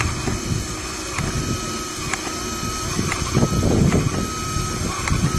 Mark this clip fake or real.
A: real